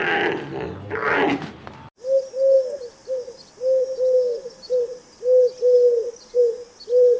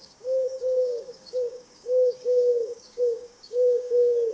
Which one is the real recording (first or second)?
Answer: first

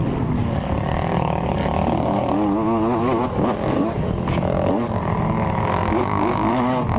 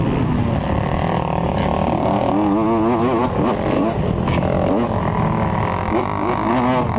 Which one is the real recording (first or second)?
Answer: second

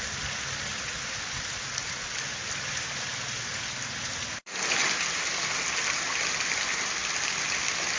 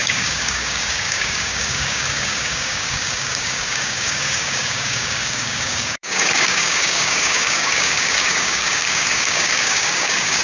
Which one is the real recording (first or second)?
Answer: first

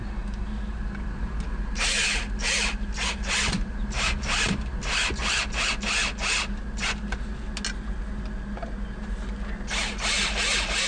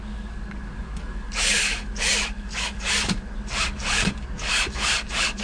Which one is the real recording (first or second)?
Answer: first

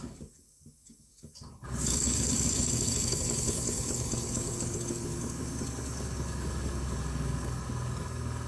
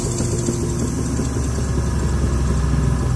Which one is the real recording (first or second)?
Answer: second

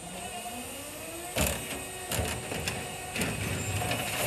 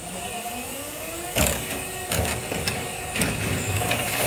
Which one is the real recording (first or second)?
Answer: first